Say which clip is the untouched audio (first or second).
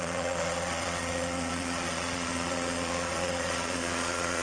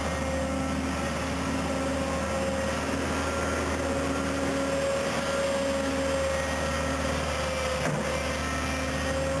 second